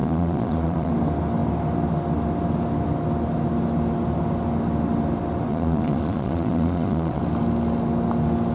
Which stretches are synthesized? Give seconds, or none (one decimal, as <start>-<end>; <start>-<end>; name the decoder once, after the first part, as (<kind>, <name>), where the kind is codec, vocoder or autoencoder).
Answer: 0.0-0.9 (vocoder, Vocos); 5.5-7.2